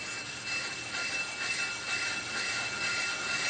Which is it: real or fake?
real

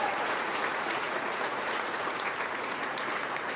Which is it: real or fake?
fake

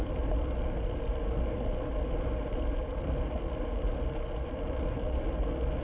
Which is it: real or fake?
real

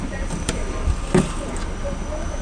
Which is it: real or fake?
real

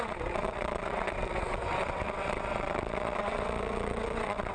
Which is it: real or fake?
fake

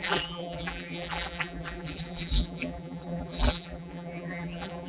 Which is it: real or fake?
fake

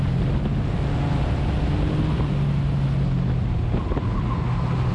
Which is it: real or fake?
real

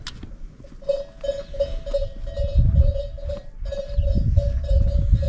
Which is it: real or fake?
real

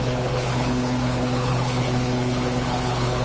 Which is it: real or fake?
fake